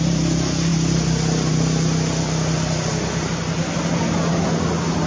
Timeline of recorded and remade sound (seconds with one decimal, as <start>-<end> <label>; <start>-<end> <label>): 0.0-5.1 recorded